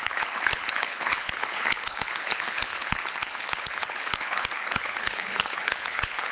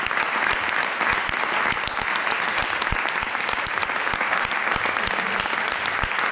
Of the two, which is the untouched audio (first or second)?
second